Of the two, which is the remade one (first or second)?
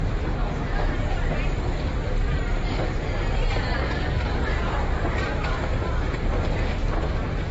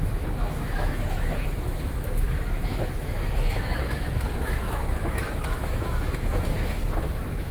second